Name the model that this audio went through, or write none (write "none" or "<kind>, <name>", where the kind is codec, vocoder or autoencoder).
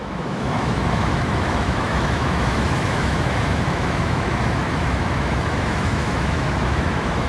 autoencoder, DAC-VAE